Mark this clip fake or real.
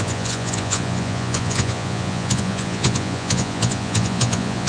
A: fake